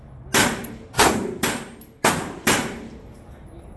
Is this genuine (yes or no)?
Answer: yes